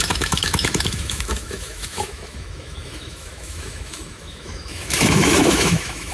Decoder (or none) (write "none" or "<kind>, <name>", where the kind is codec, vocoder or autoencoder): autoencoder, DAC-VAE